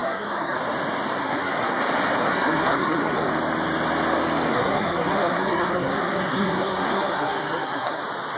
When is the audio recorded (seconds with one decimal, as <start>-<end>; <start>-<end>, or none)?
0.6-1.2; 1.8-2.2; 3.3-4.5; 8.0-8.4